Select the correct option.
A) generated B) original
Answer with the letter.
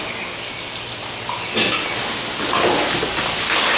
B